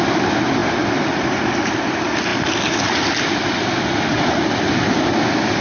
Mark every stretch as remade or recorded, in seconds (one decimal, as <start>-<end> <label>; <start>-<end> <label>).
0.0-0.6 remade; 0.6-1.2 recorded; 1.2-2.3 remade; 2.3-3.3 recorded; 3.3-5.6 remade